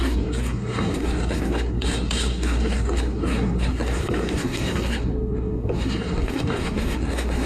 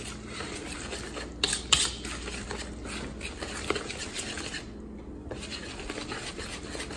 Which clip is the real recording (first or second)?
second